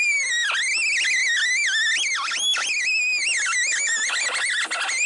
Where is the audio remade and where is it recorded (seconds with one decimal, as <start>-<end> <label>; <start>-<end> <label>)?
0.0-5.1 recorded